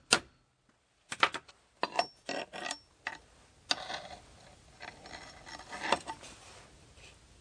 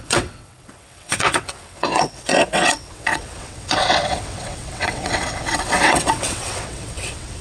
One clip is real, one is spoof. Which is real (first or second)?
first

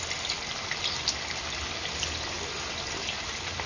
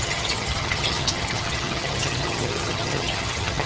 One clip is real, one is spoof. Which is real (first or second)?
first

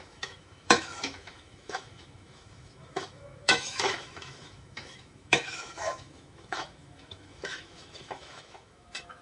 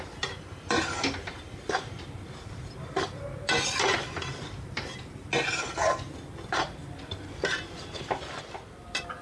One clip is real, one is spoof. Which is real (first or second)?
second